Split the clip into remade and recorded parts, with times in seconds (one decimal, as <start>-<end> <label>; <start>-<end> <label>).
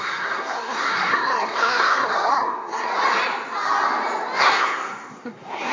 0.0-2.9 remade; 2.9-4.4 recorded; 4.4-5.7 remade